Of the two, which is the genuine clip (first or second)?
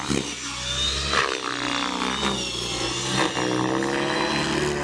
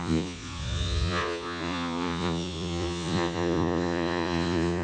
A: first